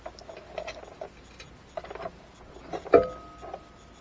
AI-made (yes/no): no